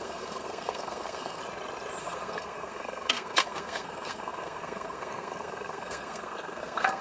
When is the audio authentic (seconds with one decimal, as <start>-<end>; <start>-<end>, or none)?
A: 1.4-2.0